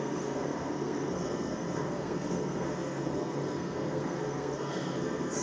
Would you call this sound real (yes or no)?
no